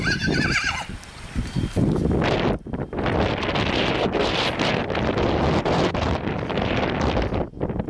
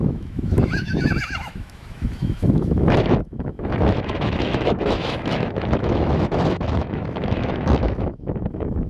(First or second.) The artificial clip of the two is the second